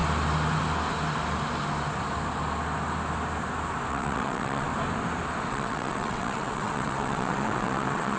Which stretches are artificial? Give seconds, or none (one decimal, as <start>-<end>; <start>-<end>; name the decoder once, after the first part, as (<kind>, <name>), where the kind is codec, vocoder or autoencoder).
3.9-4.7 (vocoder, WaveNeXt); 5.5-8.2